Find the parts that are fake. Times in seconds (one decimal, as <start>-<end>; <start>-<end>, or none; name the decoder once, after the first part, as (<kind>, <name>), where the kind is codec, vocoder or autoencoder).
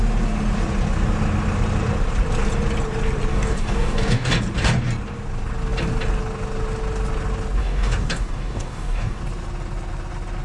3.3-4.3 (codec, DAC); 7.6-9.2